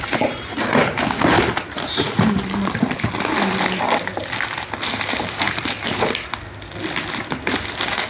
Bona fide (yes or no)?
yes